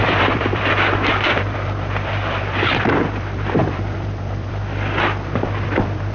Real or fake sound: fake